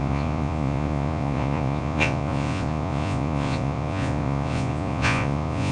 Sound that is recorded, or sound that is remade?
remade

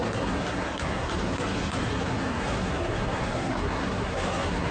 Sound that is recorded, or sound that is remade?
remade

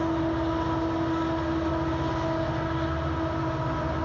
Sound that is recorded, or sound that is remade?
recorded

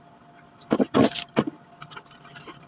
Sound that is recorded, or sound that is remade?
recorded